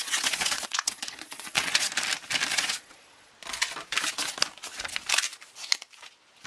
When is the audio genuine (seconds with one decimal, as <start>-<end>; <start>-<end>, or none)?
1.9-2.5; 3.3-6.5